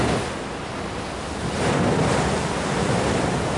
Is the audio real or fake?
real